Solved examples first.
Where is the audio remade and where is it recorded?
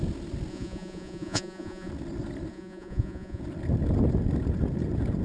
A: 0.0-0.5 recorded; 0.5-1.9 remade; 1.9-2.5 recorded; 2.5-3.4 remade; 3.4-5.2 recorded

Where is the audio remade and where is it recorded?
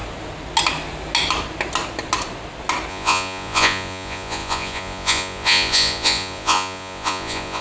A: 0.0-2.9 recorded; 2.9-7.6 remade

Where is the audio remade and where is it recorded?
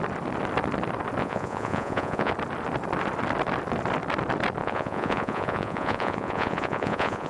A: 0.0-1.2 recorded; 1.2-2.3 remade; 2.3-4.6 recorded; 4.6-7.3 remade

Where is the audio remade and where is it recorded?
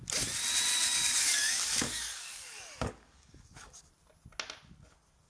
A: 0.0-0.7 recorded; 0.7-3.9 remade; 3.9-5.3 recorded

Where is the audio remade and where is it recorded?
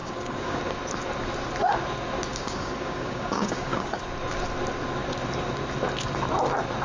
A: 0.0-0.6 remade; 0.6-2.3 recorded; 2.3-4.0 remade; 4.0-6.8 recorded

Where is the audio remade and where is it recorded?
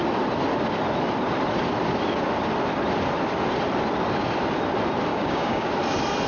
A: 0.0-5.1 recorded; 5.1-5.7 remade; 5.7-6.3 recorded